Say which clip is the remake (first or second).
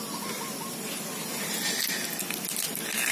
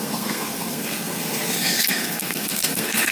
second